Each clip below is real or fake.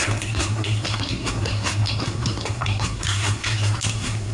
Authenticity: fake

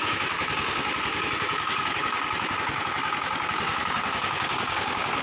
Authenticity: fake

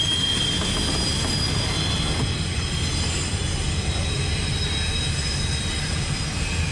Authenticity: real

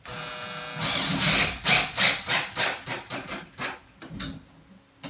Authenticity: real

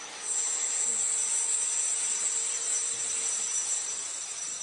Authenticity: real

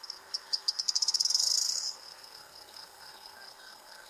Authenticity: fake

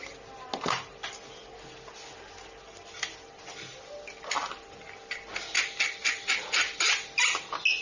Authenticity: real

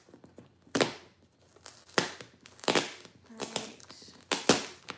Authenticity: real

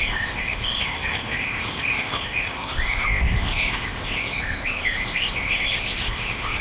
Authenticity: fake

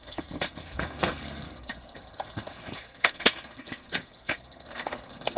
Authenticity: fake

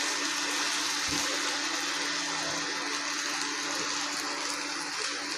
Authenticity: real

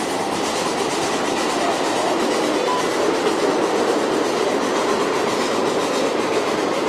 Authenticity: real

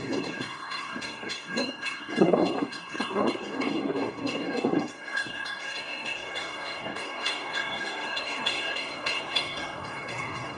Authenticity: fake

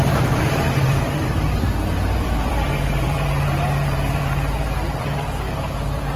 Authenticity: fake